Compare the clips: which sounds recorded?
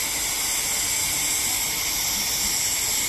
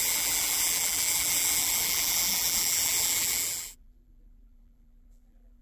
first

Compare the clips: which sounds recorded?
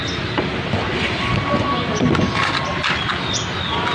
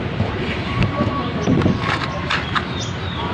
first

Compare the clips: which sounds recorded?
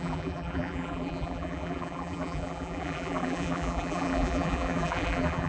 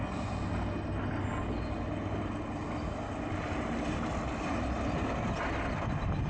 second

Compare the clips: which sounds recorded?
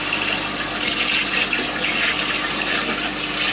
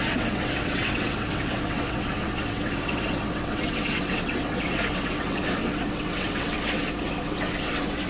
first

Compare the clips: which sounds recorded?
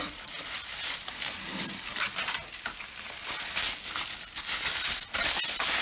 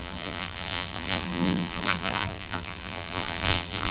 first